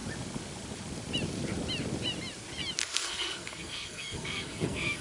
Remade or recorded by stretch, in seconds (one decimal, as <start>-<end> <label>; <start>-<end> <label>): 0.0-2.8 recorded; 2.8-5.0 remade